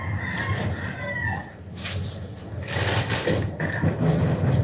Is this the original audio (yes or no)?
yes